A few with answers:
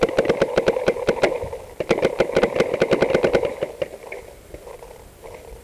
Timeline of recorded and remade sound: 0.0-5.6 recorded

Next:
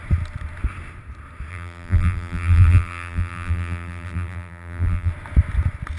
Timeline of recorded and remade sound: 0.0-1.5 recorded; 1.5-5.1 remade; 5.1-6.0 recorded

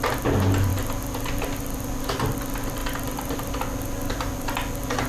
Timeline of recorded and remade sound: 0.0-5.1 recorded

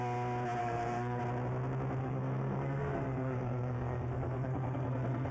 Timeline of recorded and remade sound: 0.0-0.6 recorded; 0.6-1.2 remade; 1.2-2.0 recorded; 2.0-5.3 remade

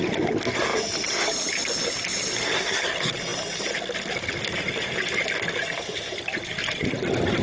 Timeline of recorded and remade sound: 0.0-7.4 recorded

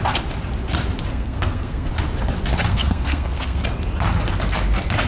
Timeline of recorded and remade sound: 0.0-1.1 recorded; 1.1-1.9 remade; 1.9-2.7 recorded; 2.7-3.6 remade; 3.6-5.1 recorded

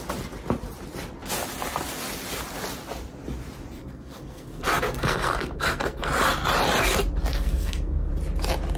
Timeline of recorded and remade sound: 0.0-3.8 recorded; 3.8-6.1 remade; 6.1-7.3 recorded; 7.3-8.1 remade; 8.1-8.8 recorded

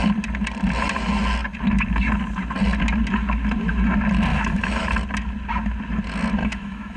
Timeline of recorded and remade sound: 0.0-4.3 recorded; 4.3-4.9 remade; 4.9-6.4 recorded; 6.4-7.0 remade